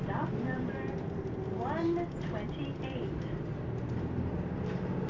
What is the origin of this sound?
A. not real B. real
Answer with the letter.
B